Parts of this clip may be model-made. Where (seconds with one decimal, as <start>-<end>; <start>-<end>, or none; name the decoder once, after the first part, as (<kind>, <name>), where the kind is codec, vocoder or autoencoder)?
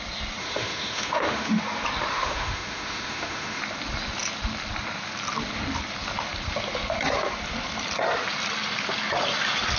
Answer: 0.4-1.6 (autoencoder, DAC-VAE); 2.1-3.6